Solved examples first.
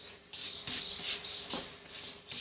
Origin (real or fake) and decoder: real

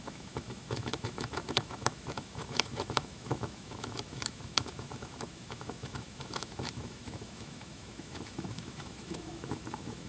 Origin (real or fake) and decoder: fake, autoencoder, DAC-VAE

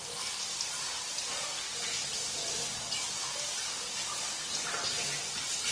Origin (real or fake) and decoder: real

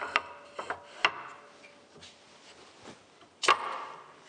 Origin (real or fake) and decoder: real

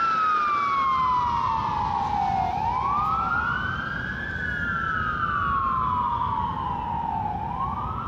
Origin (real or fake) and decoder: real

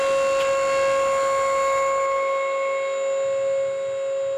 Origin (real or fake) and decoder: real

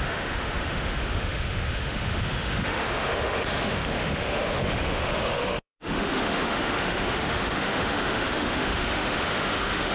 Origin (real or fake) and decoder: fake, autoencoder, DAC-VAE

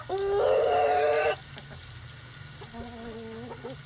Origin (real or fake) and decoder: real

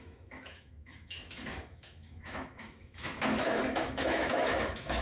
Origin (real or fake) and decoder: fake, autoencoder, DAC-VAE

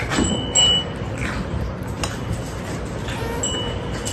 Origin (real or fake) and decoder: real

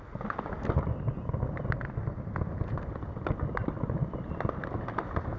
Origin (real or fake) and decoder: real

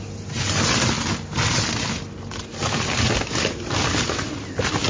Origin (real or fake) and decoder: real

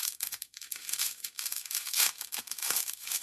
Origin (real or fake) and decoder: fake, autoencoder, DAC-VAE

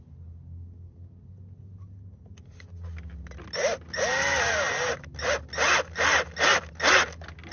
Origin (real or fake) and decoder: real